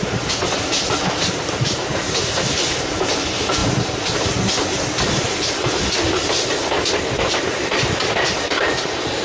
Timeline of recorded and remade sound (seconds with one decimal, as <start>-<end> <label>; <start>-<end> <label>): 0.0-9.2 recorded